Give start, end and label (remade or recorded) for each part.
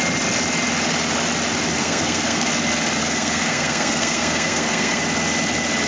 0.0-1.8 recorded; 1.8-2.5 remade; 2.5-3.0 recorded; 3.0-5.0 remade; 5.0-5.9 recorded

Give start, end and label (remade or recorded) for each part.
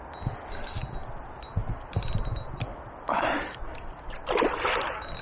0.0-5.2 recorded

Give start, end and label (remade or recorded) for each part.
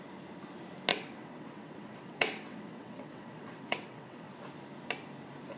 0.0-0.9 recorded; 0.9-4.3 remade; 4.3-5.6 recorded